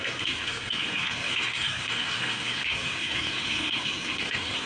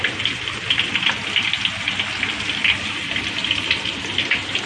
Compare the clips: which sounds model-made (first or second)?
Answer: first